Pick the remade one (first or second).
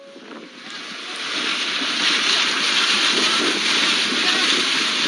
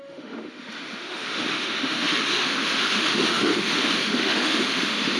second